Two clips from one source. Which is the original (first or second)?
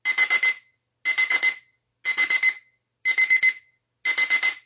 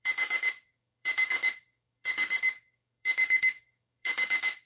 first